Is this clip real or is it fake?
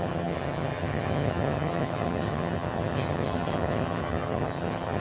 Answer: fake